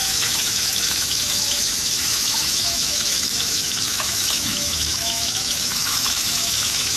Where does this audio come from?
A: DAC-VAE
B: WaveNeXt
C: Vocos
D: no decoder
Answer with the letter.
A